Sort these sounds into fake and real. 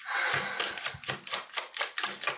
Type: real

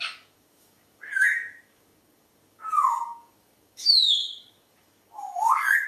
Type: fake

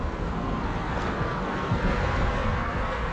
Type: fake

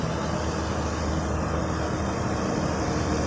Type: real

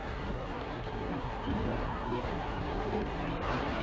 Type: fake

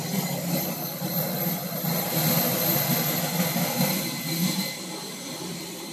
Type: fake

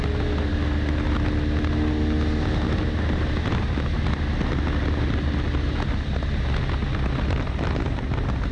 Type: real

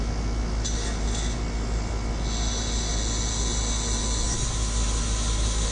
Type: real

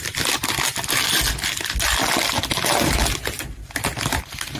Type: real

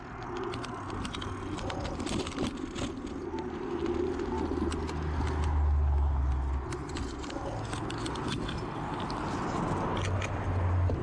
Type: real